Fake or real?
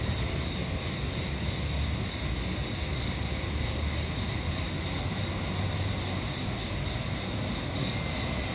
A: real